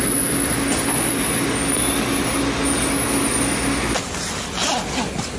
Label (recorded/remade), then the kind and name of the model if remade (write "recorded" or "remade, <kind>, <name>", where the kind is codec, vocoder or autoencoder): recorded